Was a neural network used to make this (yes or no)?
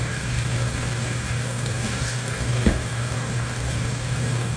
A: yes